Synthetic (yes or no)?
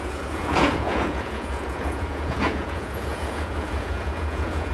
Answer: yes